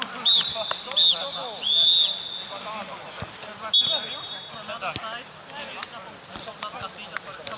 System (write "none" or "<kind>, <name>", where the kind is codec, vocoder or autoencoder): none